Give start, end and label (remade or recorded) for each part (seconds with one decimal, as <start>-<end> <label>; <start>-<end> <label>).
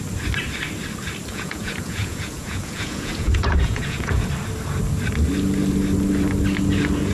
0.0-1.3 recorded; 1.3-4.3 remade; 4.3-7.1 recorded